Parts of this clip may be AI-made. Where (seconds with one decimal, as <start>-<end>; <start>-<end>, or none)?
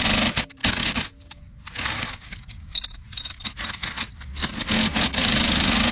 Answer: 0.6-3.0; 4.9-5.9